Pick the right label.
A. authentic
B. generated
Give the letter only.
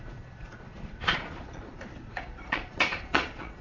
B